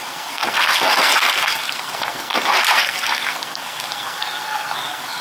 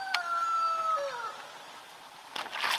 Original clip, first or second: second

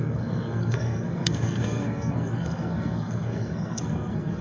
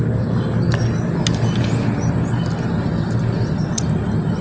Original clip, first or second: second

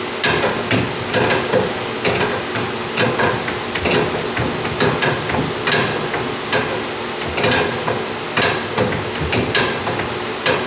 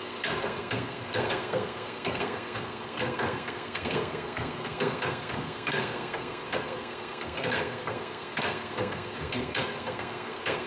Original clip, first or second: first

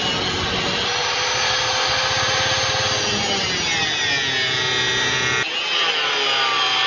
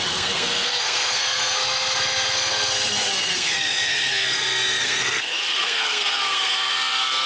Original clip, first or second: first